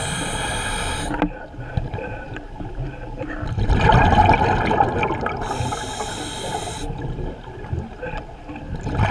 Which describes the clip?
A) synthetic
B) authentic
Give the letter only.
B